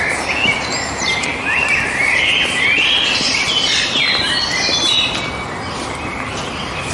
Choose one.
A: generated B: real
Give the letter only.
B